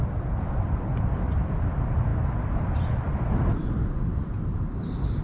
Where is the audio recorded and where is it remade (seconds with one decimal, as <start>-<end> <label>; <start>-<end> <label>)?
0.0-5.2 recorded